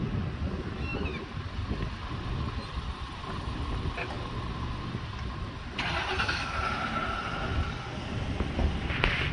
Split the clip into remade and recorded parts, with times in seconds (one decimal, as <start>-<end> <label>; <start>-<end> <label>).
0.0-9.3 recorded